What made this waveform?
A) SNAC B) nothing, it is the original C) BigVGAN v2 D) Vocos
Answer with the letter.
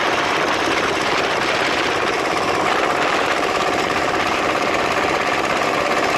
B